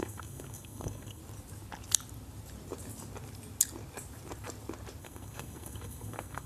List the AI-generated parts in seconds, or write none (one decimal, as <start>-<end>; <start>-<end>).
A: 0.0-1.2; 5.0-6.5

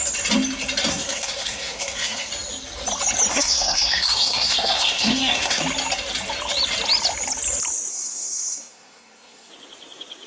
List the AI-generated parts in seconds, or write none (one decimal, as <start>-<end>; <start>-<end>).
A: 0.9-2.3; 3.3-5.6; 7.9-9.5

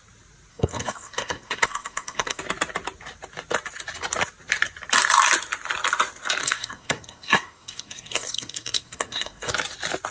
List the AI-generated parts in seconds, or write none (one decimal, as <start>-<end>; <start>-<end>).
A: 0.5-2.4; 6.4-9.5

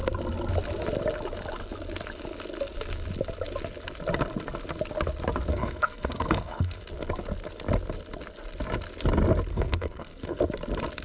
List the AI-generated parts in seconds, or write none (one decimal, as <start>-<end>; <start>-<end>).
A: 5.5-6.8; 9.5-10.4

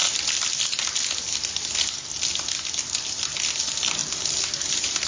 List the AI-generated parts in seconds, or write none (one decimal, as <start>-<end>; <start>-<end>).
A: none

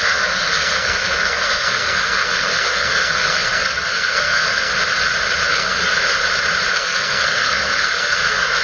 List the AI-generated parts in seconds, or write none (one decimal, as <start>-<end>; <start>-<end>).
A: 0.0-4.7; 5.5-5.9; 6.7-8.6

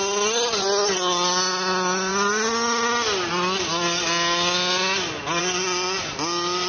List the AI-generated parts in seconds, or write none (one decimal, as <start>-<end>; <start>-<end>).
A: none

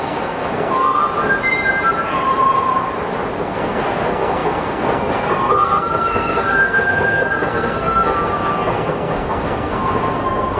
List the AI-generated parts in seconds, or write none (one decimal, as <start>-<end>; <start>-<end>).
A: 0.0-1.0; 3.4-10.6